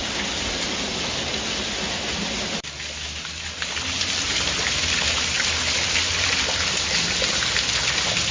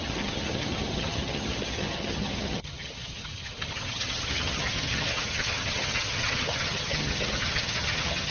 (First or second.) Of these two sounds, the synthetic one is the second